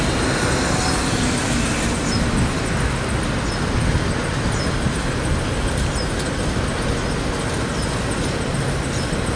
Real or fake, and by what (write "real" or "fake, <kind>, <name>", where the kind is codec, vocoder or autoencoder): real